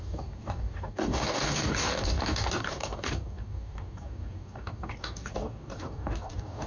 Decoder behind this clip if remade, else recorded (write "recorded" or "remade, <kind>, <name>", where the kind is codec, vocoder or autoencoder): remade, codec, DAC